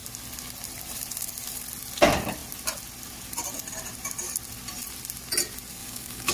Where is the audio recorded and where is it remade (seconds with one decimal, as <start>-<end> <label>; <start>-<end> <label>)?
0.0-5.8 recorded; 5.8-6.3 remade